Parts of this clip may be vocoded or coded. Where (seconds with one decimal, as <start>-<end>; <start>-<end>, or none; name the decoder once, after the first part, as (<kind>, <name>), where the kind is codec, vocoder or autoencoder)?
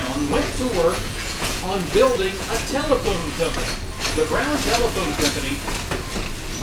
0.0-3.2 (vocoder, Vocos)